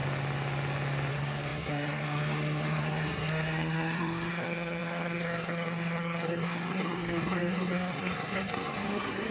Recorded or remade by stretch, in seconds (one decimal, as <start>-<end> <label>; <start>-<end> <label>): 0.0-1.1 recorded; 1.1-9.3 remade

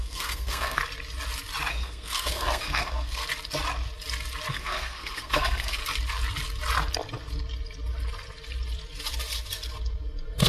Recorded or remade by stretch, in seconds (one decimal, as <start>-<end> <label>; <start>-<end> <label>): 0.0-0.8 remade; 0.8-1.7 recorded; 1.7-3.2 remade; 3.2-4.5 recorded; 4.5-5.8 remade; 5.8-10.5 recorded